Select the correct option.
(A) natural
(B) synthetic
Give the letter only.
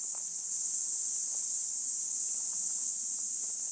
A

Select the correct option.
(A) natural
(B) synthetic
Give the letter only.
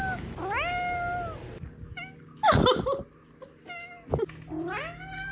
A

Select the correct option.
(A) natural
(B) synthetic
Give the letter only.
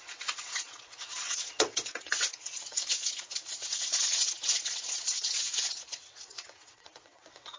B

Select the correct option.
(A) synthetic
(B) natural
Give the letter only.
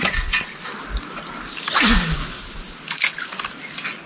B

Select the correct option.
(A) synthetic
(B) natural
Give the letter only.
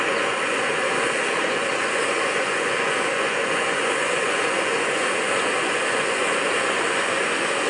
A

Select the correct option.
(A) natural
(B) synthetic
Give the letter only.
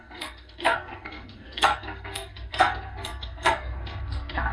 B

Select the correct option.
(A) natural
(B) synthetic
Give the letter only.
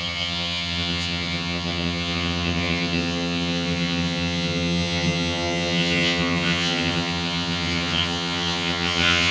B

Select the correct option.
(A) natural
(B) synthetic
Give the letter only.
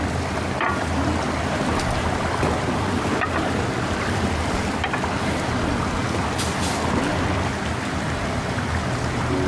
A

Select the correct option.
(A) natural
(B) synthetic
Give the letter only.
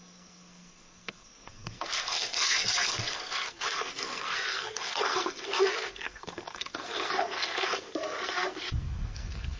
B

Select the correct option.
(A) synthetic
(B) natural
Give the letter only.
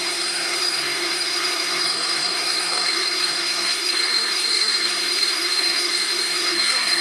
A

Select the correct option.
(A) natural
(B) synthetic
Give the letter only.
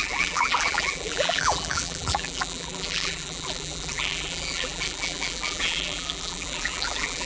B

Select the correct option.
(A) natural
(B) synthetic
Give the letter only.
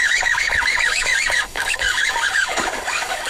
B